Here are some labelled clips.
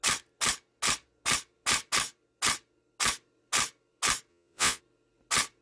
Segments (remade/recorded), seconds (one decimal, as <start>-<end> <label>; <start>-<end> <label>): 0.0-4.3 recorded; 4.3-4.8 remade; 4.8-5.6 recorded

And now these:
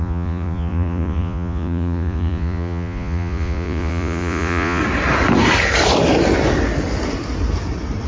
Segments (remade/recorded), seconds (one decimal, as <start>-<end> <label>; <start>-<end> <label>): 0.0-4.8 remade; 4.8-8.1 recorded

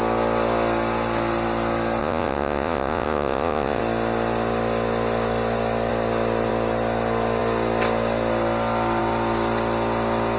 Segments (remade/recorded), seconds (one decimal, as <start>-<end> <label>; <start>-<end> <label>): 0.0-2.0 recorded; 2.0-3.8 remade; 3.8-10.4 recorded

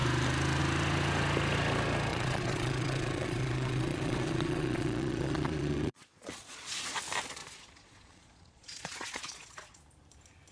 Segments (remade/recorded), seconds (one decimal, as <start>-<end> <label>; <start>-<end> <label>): 0.0-2.1 recorded; 2.1-7.0 remade; 7.0-7.4 recorded; 7.4-9.8 remade; 9.8-10.5 recorded